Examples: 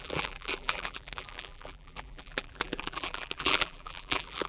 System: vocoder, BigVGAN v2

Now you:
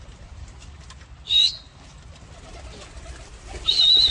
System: none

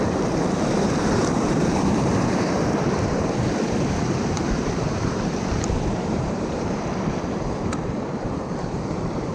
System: vocoder, BigVGAN v2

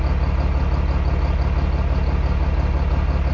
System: none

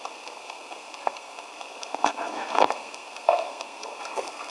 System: codec, SNAC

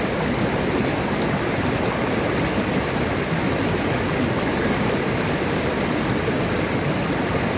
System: none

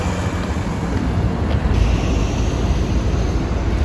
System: none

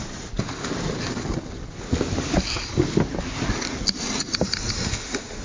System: none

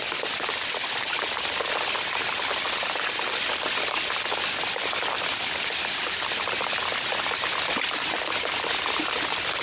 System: none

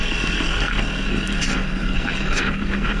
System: codec, SNAC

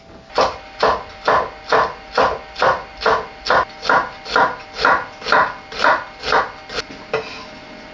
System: none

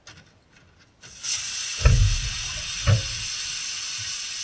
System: none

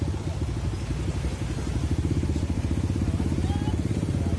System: none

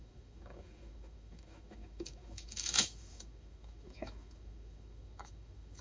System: autoencoder, DAC-VAE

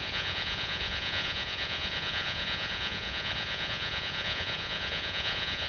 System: vocoder, Vocos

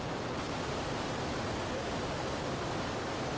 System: none